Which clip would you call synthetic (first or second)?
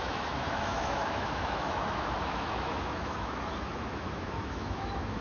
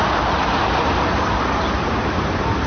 first